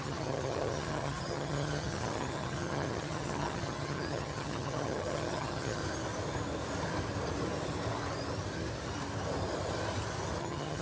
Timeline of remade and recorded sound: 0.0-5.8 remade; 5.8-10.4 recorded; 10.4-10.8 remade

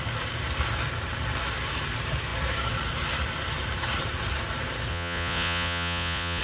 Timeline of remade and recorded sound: 0.0-4.9 recorded; 4.9-6.4 remade

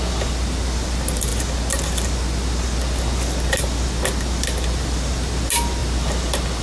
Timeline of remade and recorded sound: 0.0-6.6 recorded

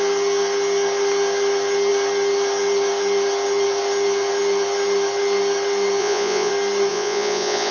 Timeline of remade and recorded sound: 0.0-6.0 recorded; 6.0-6.5 remade; 6.5-6.9 recorded; 6.9-7.7 remade

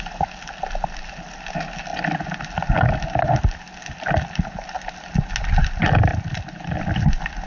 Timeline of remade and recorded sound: 0.0-7.5 recorded

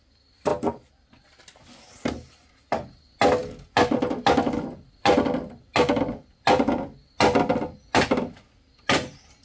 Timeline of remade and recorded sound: 0.0-9.4 recorded

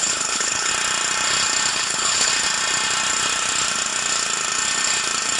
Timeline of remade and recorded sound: 0.0-0.7 remade; 0.7-1.7 recorded; 1.7-2.3 remade; 2.3-5.4 recorded